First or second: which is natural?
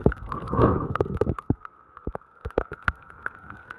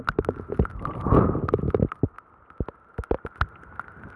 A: second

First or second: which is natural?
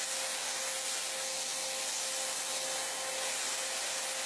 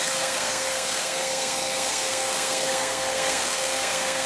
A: first